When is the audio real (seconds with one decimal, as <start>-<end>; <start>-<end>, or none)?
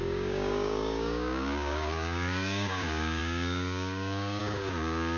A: none